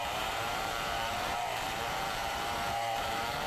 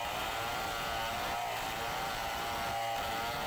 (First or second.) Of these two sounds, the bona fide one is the second